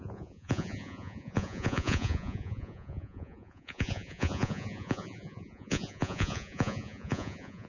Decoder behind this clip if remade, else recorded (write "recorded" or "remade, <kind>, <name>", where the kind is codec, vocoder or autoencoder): remade, vocoder, Vocos